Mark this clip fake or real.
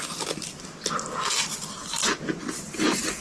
real